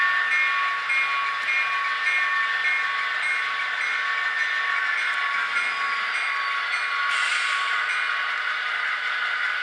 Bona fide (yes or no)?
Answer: yes